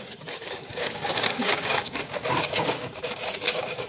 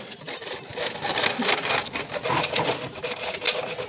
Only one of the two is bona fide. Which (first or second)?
second